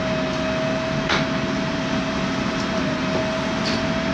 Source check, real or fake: real